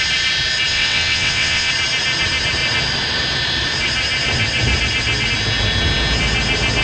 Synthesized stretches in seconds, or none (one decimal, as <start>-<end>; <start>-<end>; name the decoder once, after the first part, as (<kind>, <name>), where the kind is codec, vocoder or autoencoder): 0.7-1.7 (vocoder, WaveNeXt)